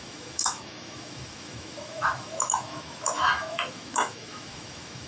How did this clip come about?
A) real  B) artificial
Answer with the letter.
B